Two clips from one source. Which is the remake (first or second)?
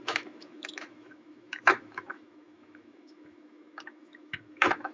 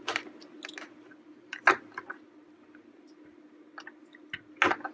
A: first